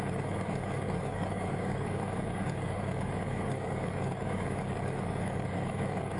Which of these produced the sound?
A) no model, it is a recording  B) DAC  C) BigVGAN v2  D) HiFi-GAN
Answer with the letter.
B